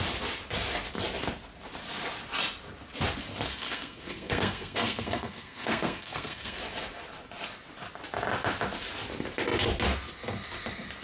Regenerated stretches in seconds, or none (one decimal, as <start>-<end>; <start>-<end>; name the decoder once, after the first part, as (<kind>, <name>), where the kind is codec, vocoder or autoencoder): 3.5-6.6 (codec, SNAC)